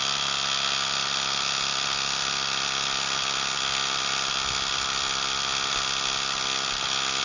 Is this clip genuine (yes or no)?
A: yes